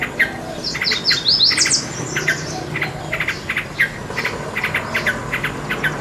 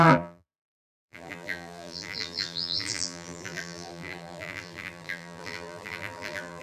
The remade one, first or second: second